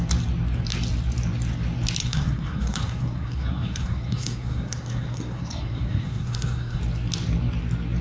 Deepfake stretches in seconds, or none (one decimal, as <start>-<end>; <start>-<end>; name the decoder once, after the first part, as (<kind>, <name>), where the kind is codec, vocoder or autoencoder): 2.0-6.8 (codec, SNAC)